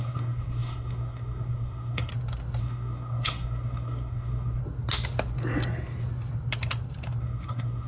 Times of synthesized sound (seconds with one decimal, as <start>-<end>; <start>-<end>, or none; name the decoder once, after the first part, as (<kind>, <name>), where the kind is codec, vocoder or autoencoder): 0.0-2.1 (codec, SNAC); 2.6-4.6; 7.2-7.9